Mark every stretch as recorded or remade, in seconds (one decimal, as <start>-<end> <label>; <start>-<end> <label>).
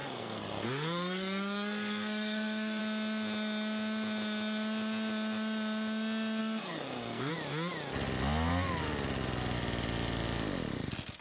0.0-2.8 remade; 2.8-6.4 recorded; 6.4-7.3 remade; 7.3-11.2 recorded